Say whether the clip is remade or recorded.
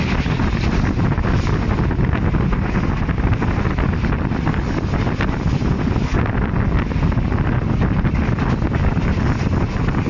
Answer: recorded